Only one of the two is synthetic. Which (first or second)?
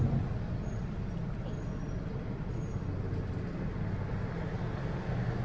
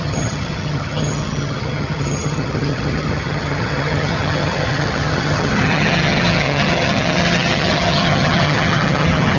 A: second